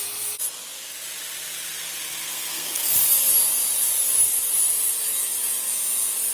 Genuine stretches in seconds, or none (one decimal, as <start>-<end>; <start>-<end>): 0.0-2.3; 2.9-6.3